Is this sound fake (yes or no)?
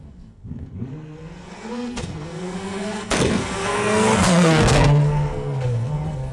yes